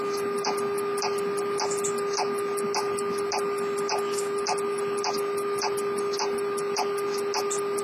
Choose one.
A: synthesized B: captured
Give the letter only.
B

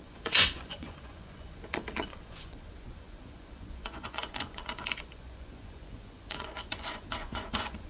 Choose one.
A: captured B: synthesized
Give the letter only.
B